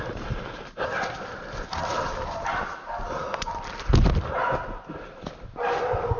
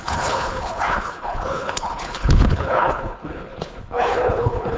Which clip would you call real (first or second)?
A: first